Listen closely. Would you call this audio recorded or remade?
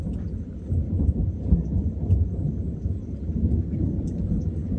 recorded